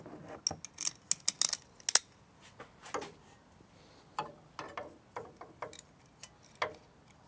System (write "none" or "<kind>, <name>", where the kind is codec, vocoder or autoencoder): none